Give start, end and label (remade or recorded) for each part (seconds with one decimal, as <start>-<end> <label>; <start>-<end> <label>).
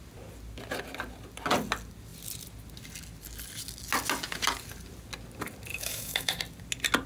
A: 0.0-5.7 recorded; 5.7-6.4 remade; 6.4-7.1 recorded